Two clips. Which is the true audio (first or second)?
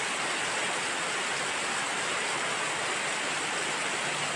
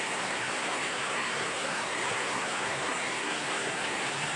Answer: first